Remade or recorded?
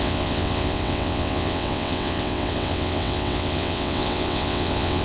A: remade